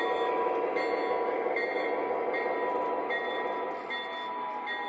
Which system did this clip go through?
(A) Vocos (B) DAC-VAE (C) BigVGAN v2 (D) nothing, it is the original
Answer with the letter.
D